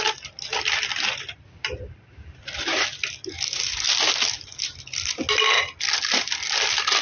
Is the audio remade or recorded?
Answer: recorded